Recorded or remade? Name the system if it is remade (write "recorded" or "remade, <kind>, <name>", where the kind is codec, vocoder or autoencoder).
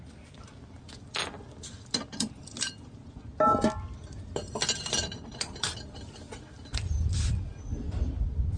recorded